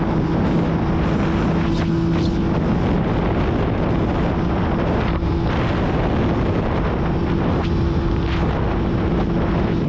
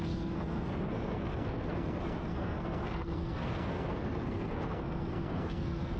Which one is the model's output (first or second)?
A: second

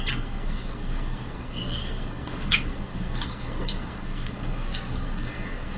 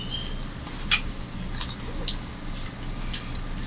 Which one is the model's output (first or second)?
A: first